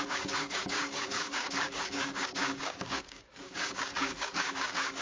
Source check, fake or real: fake